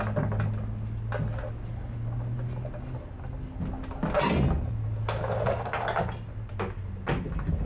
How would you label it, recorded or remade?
recorded